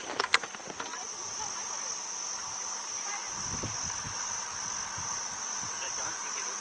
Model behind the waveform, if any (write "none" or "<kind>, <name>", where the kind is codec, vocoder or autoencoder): none